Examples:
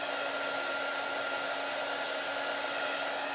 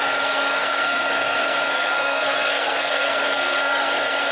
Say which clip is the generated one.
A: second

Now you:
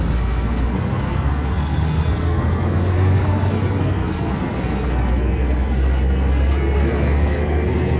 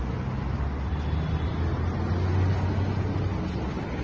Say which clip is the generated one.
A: first